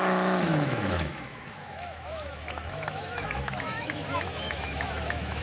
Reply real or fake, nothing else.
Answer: fake